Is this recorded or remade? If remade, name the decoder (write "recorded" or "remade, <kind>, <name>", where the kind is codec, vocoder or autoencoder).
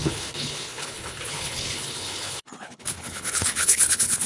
remade, codec, HILCodec